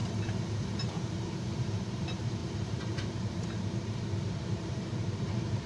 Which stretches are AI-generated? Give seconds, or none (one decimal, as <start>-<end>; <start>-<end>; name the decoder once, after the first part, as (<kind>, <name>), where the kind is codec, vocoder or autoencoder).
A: 0.8-5.7 (vocoder, BigVGAN v2)